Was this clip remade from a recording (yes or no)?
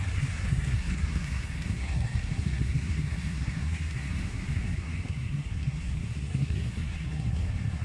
yes